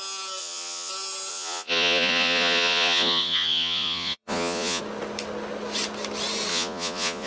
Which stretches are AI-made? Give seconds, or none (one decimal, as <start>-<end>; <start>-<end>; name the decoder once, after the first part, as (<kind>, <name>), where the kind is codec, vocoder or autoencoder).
0.4-0.9 (vocoder, Vocos); 1.3-4.8; 6.5-7.3